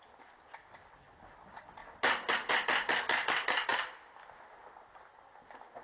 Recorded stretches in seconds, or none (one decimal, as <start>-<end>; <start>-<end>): 0.0-5.8